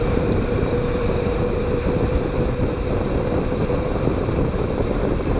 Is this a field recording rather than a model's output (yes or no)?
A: no